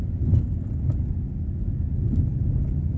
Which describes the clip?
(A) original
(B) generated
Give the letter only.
A